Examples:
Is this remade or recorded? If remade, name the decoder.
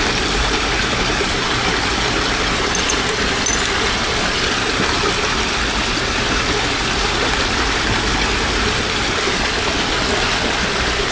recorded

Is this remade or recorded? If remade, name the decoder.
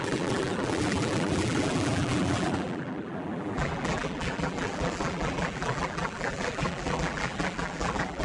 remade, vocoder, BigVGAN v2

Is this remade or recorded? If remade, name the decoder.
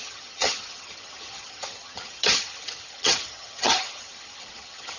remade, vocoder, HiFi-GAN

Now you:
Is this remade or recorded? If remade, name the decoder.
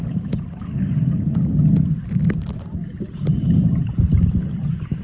recorded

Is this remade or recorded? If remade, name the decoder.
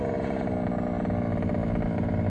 recorded